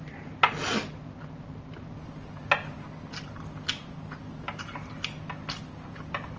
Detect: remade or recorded recorded